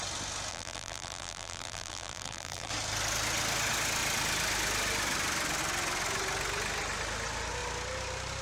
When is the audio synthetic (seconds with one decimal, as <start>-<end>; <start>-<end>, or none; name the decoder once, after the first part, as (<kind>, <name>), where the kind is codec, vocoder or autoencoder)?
0.5-2.7 (vocoder, BigVGAN v2)